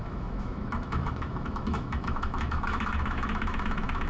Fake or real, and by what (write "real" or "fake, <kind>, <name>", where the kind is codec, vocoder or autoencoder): fake, autoencoder, DAC-VAE